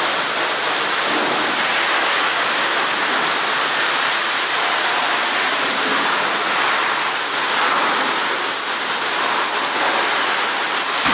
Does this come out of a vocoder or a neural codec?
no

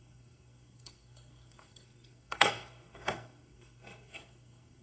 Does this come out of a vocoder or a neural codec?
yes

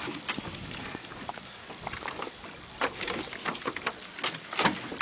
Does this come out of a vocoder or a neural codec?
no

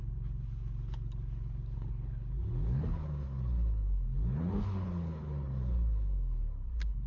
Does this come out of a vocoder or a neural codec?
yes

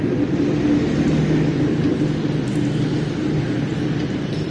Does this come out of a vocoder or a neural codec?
no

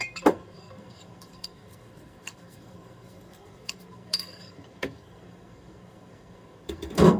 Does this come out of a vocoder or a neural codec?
yes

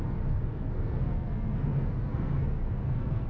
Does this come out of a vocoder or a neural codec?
yes